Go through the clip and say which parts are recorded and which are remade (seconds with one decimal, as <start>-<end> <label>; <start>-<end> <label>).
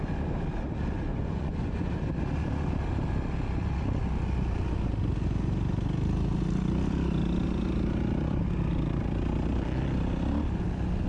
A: 0.0-1.1 recorded; 1.1-1.9 remade; 1.9-11.1 recorded